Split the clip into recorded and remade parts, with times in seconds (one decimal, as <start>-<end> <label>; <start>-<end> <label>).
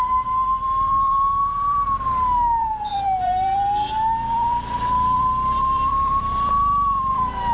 0.0-1.8 remade; 1.8-2.6 recorded; 2.6-7.5 remade